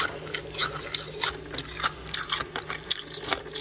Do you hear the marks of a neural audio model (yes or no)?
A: no